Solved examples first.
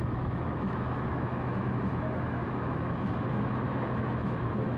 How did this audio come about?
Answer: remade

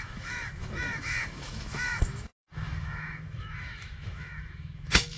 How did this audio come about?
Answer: remade